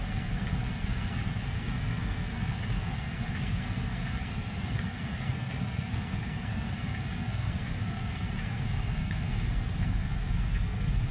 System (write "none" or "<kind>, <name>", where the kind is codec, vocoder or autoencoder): codec, SNAC